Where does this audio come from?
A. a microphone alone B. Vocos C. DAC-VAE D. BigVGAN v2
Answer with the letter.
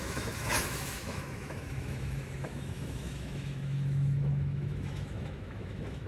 C